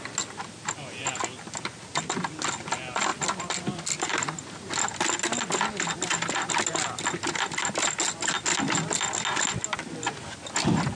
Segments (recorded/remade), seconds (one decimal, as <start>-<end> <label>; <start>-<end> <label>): 0.0-10.9 recorded